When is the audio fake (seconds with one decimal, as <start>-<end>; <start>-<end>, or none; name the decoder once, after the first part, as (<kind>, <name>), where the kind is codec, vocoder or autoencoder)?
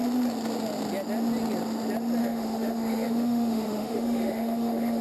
2.2-5.0 (autoencoder, DAC-VAE)